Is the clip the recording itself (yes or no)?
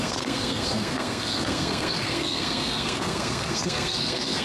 no